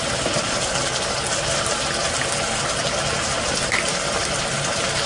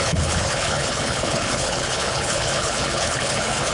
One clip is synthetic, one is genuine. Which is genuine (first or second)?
first